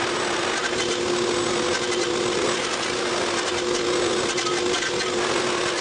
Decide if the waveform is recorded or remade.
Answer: recorded